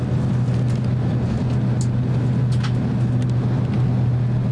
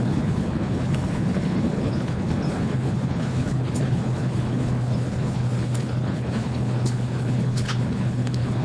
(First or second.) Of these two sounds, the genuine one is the first